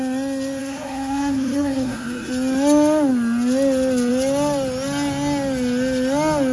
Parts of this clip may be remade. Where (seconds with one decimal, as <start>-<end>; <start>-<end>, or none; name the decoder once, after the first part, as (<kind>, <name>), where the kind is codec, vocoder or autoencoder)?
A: 0.6-2.3 (codec, SNAC)